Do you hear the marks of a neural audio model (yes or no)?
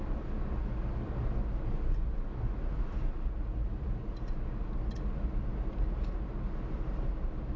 no